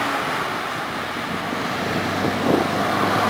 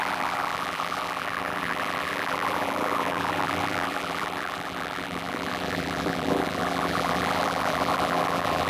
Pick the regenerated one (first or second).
second